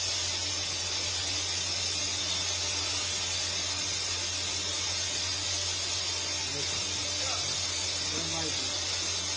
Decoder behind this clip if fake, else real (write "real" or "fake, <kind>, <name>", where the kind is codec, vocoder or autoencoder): real